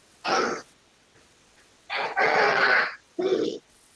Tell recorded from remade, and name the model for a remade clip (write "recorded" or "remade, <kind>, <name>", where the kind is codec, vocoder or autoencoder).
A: remade, vocoder, WaveNeXt